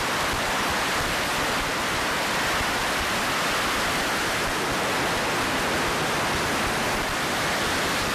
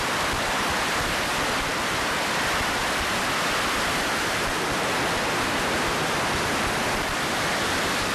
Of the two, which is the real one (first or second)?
first